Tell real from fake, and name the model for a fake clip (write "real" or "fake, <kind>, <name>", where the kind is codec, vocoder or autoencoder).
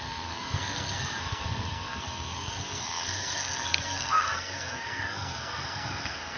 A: fake, codec, SNAC